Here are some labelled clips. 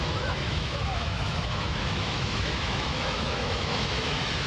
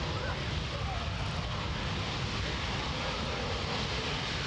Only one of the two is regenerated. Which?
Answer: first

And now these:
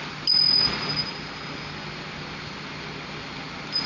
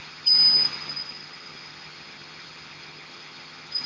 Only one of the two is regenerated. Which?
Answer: second